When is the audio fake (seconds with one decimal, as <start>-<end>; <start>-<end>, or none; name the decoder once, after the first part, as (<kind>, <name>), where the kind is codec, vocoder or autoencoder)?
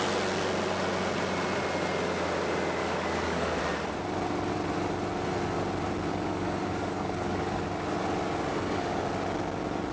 2.8-3.6 (codec, DAC); 6.1-7.6; 8.5-9.0